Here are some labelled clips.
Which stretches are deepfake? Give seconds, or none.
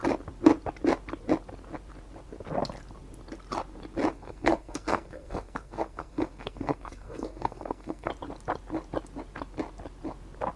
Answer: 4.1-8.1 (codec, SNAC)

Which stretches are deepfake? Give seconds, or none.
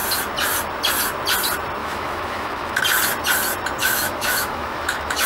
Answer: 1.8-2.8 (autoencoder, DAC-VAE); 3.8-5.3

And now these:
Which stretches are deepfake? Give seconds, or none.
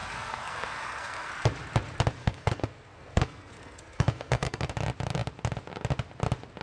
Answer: 0.0-1.3 (codec, SNAC); 2.2-4.7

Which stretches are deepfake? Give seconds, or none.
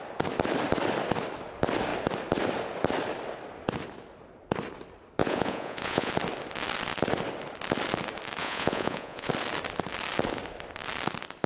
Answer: 5.2-6.1 (vocoder, Vocos); 8.4-9.3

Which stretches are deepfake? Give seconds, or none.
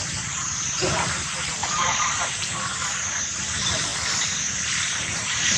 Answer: 0.0-3.9 (vocoder, BigVGAN v2); 4.5-5.6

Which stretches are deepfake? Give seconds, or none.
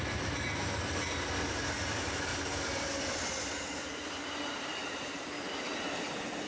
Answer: 3.9-5.2 (vocoder, BigVGAN v2)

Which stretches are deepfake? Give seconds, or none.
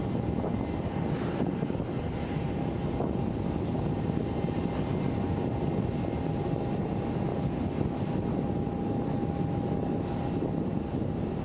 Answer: none